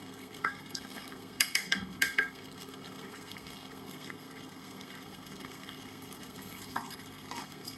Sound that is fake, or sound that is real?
fake